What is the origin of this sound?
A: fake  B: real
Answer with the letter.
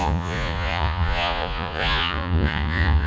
A